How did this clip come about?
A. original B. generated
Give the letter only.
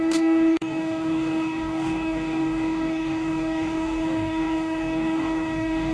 B